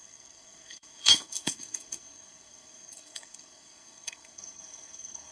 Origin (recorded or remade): remade